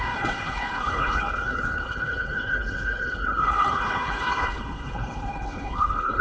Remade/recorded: remade